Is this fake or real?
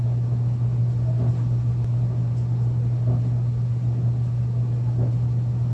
real